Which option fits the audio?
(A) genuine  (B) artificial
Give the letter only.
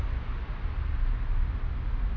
A